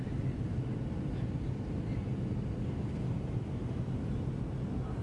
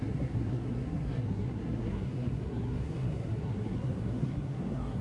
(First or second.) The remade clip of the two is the second